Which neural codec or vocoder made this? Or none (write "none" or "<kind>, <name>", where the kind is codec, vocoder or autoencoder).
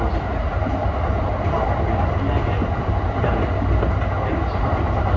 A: none